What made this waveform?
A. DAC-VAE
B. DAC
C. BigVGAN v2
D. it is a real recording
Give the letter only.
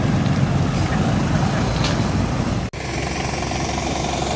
D